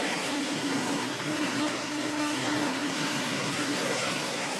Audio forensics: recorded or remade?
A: remade